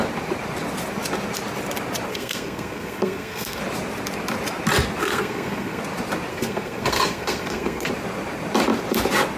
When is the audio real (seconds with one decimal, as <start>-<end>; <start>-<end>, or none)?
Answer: 0.0-2.1; 3.6-5.0; 5.8-6.3; 7.9-9.4